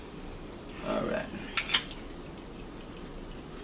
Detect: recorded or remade recorded